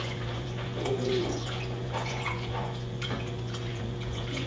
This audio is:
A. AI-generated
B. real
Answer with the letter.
A